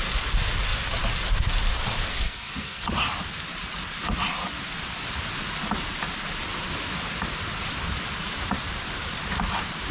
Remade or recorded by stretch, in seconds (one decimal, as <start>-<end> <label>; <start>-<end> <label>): 0.0-2.1 recorded; 2.1-2.9 remade; 2.9-9.9 recorded